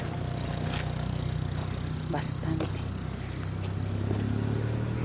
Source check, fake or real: real